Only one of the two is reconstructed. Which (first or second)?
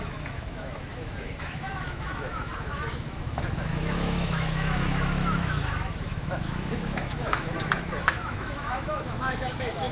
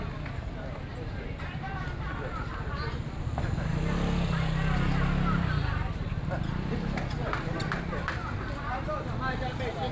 first